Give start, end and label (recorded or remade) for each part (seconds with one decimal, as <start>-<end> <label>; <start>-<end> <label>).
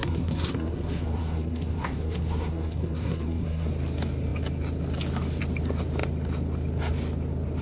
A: 0.0-3.7 remade; 3.7-7.6 recorded